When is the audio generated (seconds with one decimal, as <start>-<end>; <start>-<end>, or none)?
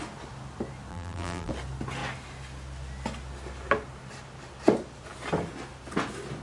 0.9-1.5